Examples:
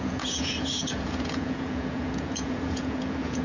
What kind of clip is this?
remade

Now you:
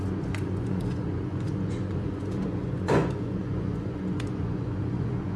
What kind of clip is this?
remade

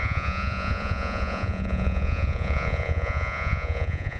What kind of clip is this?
remade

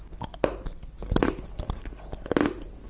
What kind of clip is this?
recorded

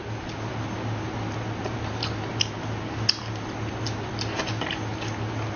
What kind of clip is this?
recorded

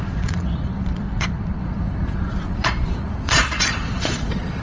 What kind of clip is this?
remade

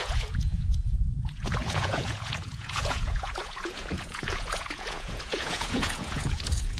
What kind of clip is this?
remade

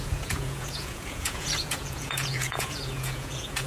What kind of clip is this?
remade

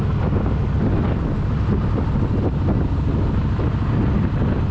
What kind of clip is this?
recorded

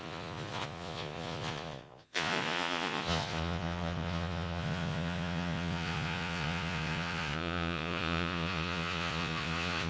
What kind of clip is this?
remade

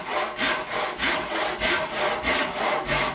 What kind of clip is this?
recorded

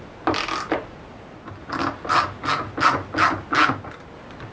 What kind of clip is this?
recorded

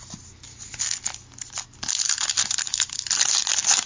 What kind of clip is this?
recorded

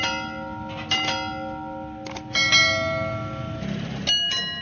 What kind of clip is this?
recorded